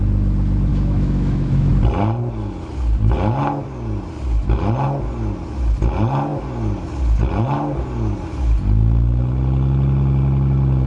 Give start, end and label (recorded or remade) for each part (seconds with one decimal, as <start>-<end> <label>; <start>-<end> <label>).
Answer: 0.0-0.7 recorded; 0.7-1.7 remade; 1.7-10.9 recorded